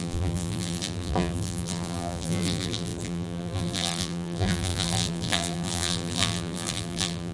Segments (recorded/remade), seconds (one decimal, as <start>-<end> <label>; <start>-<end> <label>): 0.0-7.3 remade